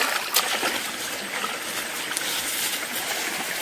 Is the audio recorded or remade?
recorded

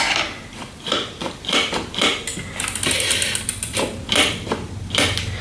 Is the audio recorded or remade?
recorded